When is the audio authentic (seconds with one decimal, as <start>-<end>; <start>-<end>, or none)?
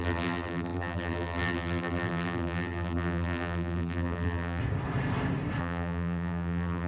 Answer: 4.6-5.6